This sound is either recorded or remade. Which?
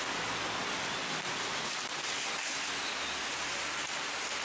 recorded